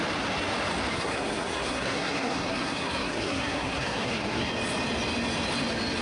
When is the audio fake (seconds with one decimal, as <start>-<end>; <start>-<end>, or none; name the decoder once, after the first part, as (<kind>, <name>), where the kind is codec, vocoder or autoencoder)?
0.9-4.5 (codec, SNAC)